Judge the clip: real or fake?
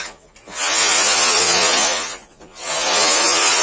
fake